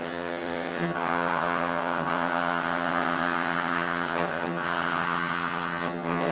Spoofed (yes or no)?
yes